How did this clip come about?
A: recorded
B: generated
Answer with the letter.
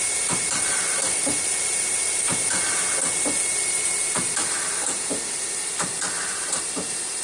B